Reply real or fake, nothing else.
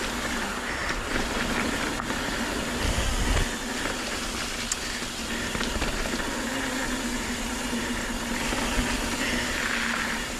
real